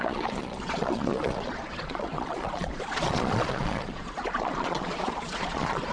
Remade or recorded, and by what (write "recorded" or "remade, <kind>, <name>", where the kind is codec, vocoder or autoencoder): remade, vocoder, Vocos